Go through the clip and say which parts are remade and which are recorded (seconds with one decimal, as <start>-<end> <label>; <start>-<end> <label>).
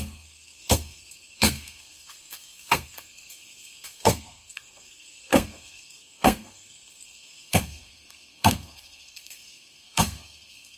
0.0-10.8 remade